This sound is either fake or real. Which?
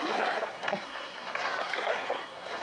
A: fake